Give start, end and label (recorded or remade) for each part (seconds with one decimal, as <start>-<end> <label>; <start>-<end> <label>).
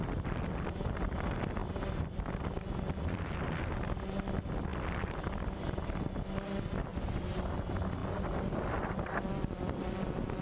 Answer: 0.0-1.6 recorded; 1.6-2.5 remade; 2.5-4.7 recorded; 4.7-5.7 remade; 5.7-8.0 recorded; 8.0-9.8 remade; 9.8-10.4 recorded